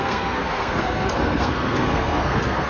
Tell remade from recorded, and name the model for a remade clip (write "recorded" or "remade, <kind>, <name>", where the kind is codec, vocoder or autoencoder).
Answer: remade, codec, SNAC